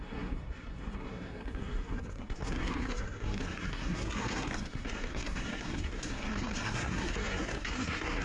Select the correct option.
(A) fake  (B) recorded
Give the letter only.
A